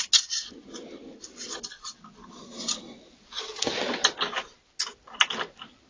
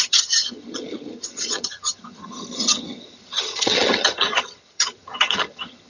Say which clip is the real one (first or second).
first